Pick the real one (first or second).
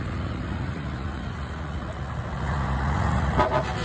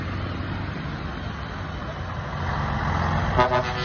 second